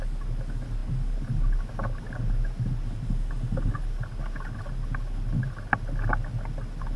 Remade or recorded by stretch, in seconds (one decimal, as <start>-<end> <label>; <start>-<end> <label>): 0.0-7.0 recorded